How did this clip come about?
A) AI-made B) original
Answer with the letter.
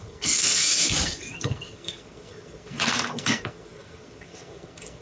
A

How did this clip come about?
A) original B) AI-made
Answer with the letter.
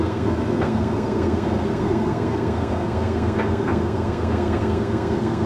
B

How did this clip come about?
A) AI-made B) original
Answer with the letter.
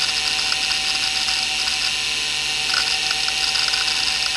B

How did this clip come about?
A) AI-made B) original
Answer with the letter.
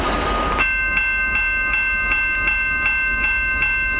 B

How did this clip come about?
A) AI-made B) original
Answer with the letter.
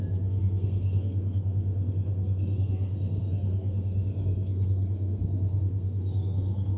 A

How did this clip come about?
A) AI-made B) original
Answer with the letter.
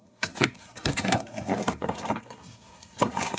A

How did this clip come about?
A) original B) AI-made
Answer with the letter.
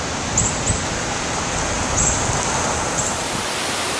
A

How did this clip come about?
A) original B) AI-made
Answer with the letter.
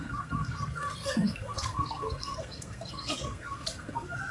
B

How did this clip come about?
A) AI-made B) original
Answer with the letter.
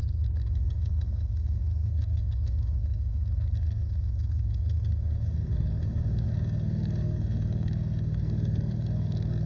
A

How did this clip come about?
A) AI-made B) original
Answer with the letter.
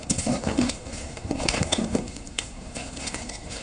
A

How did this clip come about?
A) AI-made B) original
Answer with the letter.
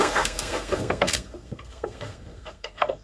A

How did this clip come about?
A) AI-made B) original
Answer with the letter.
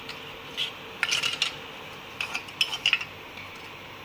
B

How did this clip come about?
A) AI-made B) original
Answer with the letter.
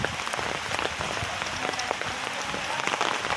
B